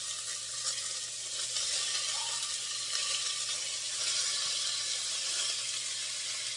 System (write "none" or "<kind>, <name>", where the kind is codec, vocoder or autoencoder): none